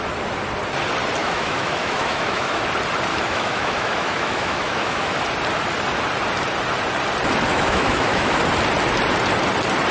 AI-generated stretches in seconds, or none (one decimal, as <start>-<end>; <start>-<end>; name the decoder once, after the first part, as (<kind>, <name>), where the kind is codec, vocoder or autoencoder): 1.2-2.6 (autoencoder, DAC-VAE); 3.1-5.2; 7.5-8.4